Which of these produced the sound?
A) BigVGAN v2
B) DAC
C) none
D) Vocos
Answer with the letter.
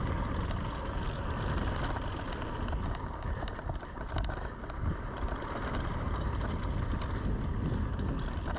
C